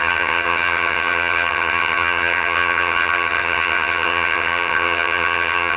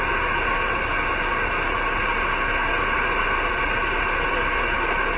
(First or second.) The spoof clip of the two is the first